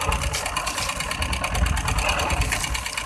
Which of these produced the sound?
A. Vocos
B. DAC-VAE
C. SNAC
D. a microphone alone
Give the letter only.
D